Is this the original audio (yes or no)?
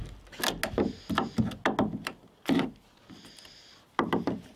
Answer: yes